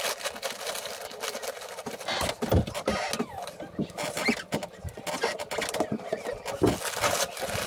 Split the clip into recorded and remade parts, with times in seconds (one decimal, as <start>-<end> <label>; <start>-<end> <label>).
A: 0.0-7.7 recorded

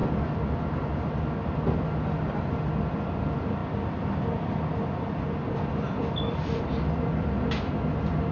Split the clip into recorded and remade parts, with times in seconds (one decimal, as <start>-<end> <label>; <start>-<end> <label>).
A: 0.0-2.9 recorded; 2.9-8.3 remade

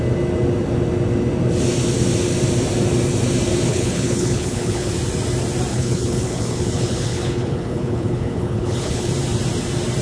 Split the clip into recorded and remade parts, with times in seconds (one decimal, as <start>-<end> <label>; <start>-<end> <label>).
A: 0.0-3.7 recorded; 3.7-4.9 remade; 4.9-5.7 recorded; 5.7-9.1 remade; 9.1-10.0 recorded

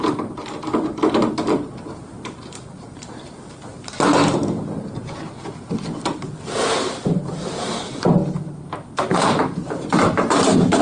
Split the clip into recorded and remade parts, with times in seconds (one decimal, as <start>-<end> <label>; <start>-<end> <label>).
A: 0.0-3.7 remade; 3.7-5.0 recorded; 5.0-8.2 remade; 8.2-9.0 recorded; 9.0-10.8 remade

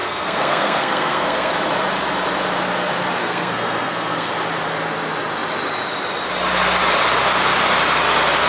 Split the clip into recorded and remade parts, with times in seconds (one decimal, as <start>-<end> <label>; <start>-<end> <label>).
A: 0.0-1.5 remade; 1.5-3.2 recorded; 3.2-4.3 remade; 4.3-8.5 recorded

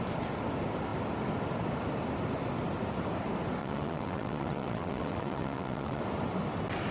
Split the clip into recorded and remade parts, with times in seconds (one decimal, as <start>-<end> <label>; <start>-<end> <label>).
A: 0.0-3.6 recorded; 3.6-6.0 remade; 6.0-6.9 recorded

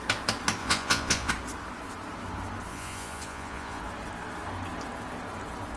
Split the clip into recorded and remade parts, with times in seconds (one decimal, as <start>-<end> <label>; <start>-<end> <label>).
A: 0.0-0.6 recorded; 0.6-1.3 remade; 1.3-2.7 recorded; 2.7-3.8 remade; 3.8-5.8 recorded